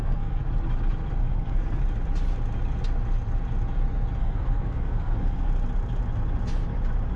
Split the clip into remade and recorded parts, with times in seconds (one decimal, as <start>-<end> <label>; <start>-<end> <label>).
0.0-0.4 remade; 0.4-1.2 recorded; 1.2-1.8 remade; 1.8-4.2 recorded; 4.2-5.5 remade; 5.5-7.2 recorded